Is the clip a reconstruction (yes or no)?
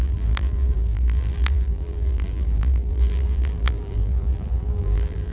yes